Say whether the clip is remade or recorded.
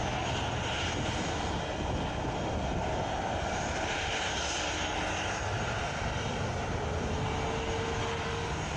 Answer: recorded